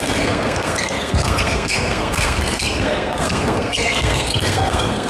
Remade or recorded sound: remade